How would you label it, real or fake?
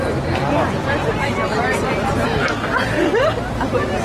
real